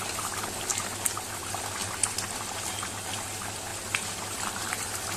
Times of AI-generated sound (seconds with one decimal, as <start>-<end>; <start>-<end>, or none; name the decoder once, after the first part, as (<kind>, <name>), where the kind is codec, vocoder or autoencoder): none